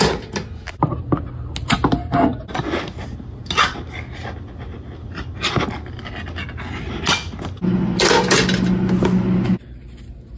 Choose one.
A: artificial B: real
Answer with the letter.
B